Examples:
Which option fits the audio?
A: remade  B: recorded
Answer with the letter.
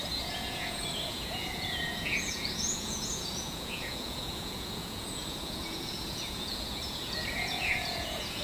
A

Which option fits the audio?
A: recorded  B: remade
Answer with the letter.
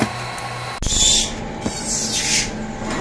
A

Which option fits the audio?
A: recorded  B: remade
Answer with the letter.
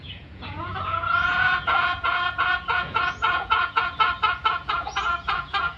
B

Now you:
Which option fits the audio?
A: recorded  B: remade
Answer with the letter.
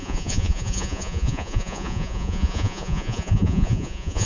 B